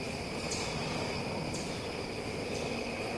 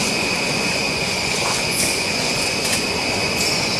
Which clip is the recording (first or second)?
first